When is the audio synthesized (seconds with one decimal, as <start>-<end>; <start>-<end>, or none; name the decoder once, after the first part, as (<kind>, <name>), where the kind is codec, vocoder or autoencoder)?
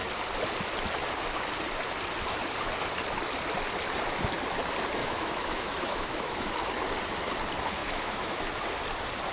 5.0-6.7 (autoencoder, DAC-VAE); 7.8-8.5